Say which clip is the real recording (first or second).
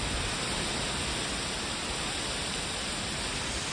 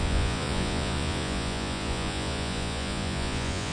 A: first